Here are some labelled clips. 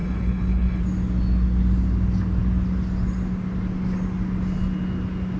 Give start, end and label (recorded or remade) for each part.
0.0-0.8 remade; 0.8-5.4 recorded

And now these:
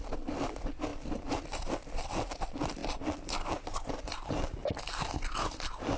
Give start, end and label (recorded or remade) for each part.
0.0-2.8 remade; 2.8-3.9 recorded; 3.9-4.6 remade; 4.6-5.3 recorded; 5.3-6.0 remade

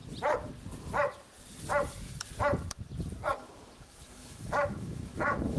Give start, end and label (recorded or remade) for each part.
0.0-3.4 recorded; 3.4-5.6 remade

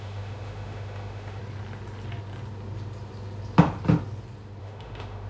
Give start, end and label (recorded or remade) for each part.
0.0-1.4 remade; 1.4-4.6 recorded; 4.6-5.3 remade

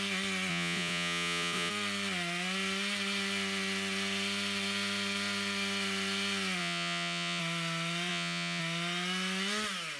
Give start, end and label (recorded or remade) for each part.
0.0-0.5 recorded; 0.5-1.7 remade; 1.7-6.6 recorded; 6.6-7.4 remade; 7.4-8.1 recorded; 8.1-8.6 remade; 8.6-10.0 recorded

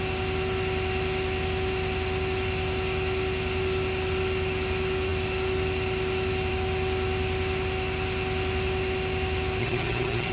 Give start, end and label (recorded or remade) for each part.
0.0-9.6 recorded; 9.6-10.3 remade

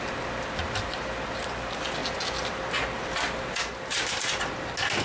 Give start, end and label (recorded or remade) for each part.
0.0-5.0 recorded